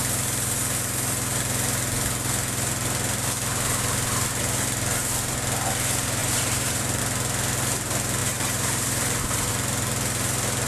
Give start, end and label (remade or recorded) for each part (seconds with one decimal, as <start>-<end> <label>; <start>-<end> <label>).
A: 0.0-6.2 recorded; 6.2-7.0 remade; 7.0-8.2 recorded; 8.2-9.5 remade; 9.5-10.7 recorded